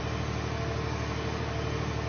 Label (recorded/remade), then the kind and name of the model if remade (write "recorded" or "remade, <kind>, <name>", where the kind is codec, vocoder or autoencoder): recorded